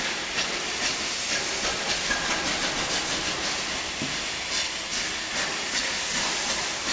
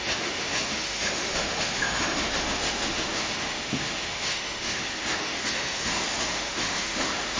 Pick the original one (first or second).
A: first